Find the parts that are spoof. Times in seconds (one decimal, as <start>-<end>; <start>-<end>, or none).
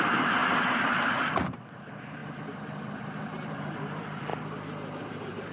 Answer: 0.0-4.3; 5.0-5.5